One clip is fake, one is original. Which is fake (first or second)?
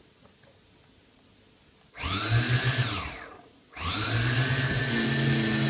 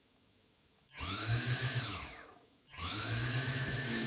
second